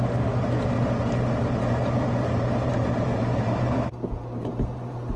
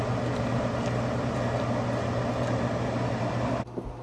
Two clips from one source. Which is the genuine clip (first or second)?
second